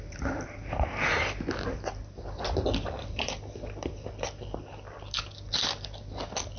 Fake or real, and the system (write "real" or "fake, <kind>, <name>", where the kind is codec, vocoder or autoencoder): real